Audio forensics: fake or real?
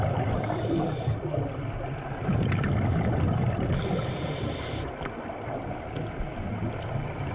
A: real